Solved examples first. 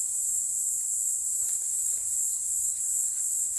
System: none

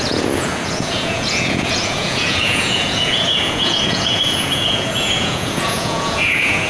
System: vocoder, Vocos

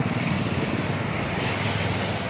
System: none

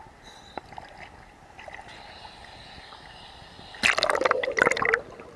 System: none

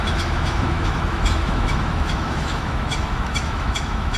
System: autoencoder, DAC-VAE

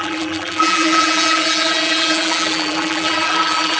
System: vocoder, BigVGAN v2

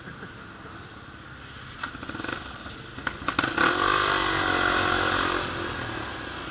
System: none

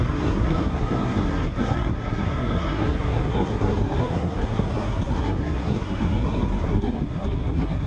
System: codec, SNAC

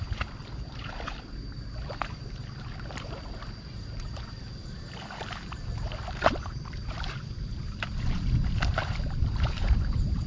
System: vocoder, BigVGAN v2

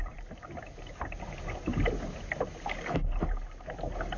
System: none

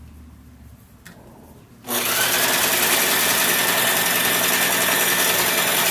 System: none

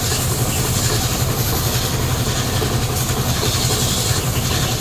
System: none